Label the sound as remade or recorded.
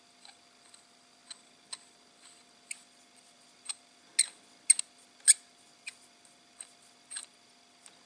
recorded